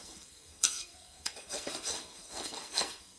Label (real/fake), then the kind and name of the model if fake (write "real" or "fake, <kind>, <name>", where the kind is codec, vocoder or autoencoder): fake, codec, SNAC